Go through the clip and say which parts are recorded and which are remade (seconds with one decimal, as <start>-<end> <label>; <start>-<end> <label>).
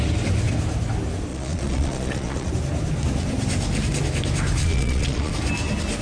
0.0-1.3 recorded; 1.3-2.5 remade; 2.5-4.6 recorded; 4.6-5.3 remade; 5.3-6.0 recorded